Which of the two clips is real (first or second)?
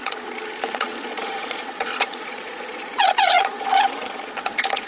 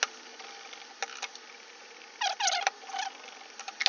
second